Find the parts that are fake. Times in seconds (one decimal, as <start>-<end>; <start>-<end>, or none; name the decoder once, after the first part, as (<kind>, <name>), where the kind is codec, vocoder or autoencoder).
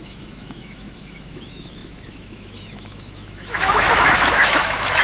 0.0-5.0 (autoencoder, DAC-VAE)